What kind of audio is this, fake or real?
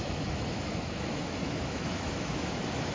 fake